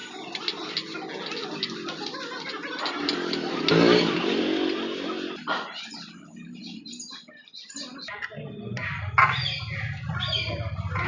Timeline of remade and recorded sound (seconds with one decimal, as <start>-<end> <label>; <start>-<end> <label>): 0.0-11.1 recorded